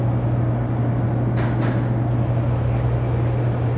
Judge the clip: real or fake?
real